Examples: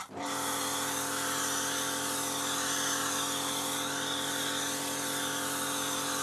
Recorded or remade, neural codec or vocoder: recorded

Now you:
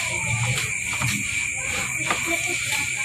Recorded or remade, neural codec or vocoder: recorded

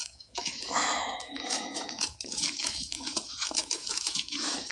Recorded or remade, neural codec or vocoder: remade, autoencoder, DAC-VAE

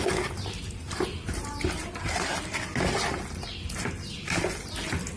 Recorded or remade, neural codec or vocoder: recorded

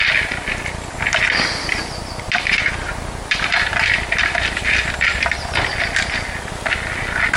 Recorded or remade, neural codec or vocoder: recorded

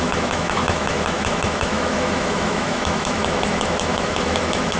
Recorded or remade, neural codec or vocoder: remade, autoencoder, DAC-VAE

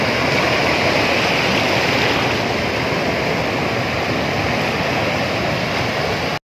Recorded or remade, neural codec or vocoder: recorded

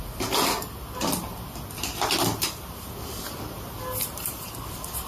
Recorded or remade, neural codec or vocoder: recorded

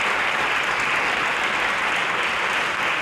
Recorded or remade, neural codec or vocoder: recorded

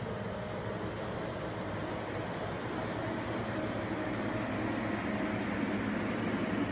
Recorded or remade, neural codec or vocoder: recorded